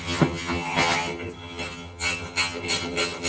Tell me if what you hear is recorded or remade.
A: remade